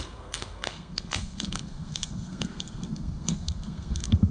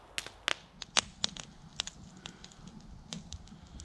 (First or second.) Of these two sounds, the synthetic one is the first